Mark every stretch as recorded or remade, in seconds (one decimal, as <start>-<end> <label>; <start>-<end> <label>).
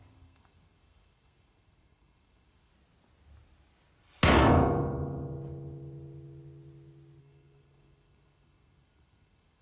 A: 0.0-2.7 remade; 2.7-7.2 recorded; 7.2-9.6 remade